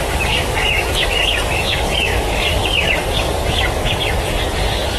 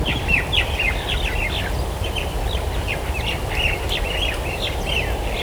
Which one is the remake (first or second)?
first